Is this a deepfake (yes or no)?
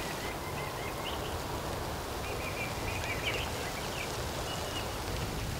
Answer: no